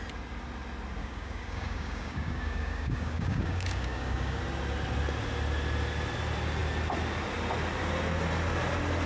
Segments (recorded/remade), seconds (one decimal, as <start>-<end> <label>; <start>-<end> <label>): 0.0-1.0 recorded; 1.0-4.4 remade; 4.4-9.1 recorded